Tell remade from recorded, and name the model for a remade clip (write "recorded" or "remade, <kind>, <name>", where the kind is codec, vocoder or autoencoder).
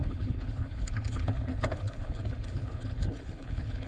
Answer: remade, codec, HILCodec